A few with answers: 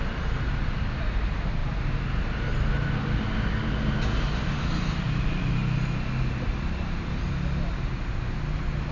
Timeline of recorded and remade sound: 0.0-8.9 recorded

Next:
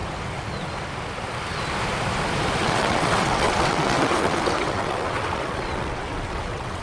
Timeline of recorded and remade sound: 0.0-2.6 recorded; 2.6-6.8 remade

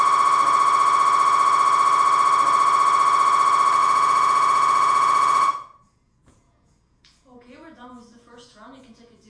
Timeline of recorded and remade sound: 0.0-3.8 recorded; 3.8-9.3 remade

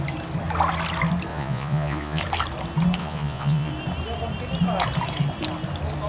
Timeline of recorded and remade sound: 0.0-1.3 recorded; 1.3-2.2 remade; 2.2-3.0 recorded; 3.0-3.7 remade; 3.7-6.1 recorded